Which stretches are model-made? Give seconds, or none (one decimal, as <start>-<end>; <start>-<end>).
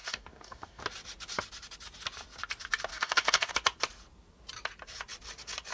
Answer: 0.0-0.8; 2.9-3.5